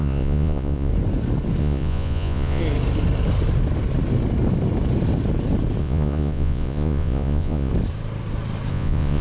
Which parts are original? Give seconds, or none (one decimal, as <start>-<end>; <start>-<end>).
0.9-1.6; 2.6-5.8; 7.7-8.7